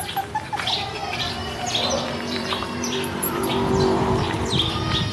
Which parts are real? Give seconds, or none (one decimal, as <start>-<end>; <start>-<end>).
0.0-1.0; 3.7-5.1